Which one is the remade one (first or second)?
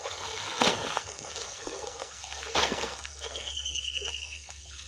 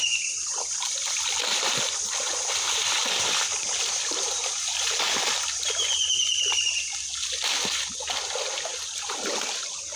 first